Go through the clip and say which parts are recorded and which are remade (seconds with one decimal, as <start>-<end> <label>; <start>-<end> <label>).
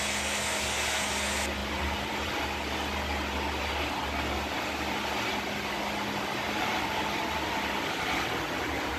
0.0-1.6 recorded; 1.6-2.3 remade; 2.3-9.0 recorded